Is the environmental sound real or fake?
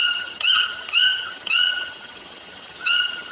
fake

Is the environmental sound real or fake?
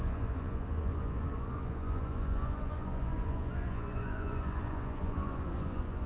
fake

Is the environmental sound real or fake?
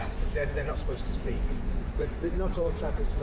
fake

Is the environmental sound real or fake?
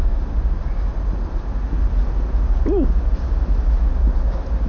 real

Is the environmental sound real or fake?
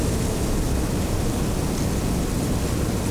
real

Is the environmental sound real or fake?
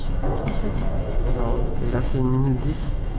fake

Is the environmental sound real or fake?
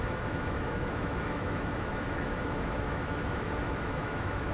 fake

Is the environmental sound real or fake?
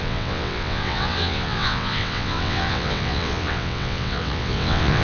fake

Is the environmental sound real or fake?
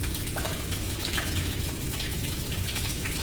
fake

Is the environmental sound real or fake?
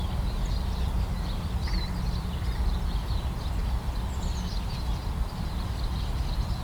real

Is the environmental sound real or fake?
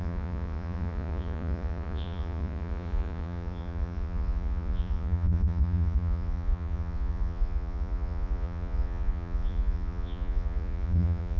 fake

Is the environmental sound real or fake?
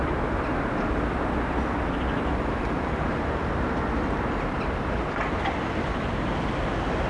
real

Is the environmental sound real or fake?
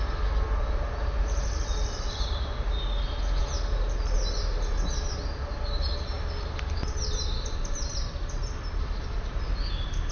real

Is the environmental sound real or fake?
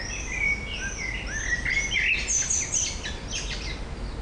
real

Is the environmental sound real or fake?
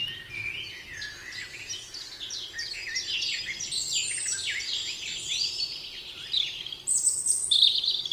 real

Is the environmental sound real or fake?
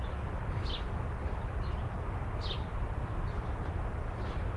real